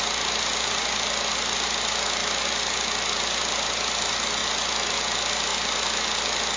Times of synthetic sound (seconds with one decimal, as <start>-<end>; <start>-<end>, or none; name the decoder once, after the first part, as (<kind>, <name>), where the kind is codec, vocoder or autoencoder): none